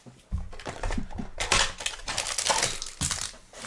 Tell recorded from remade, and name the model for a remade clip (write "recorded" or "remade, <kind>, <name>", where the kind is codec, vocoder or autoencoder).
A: recorded